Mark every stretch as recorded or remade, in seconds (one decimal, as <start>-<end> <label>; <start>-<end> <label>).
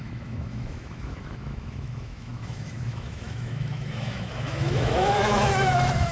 0.0-6.1 remade